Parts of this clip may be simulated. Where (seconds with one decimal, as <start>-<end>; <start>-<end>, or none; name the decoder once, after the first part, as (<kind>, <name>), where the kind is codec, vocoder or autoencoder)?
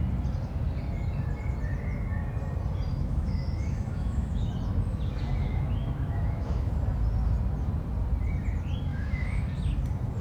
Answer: 2.9-4.5 (autoencoder, DAC-VAE); 5.4-6.7; 8.9-9.4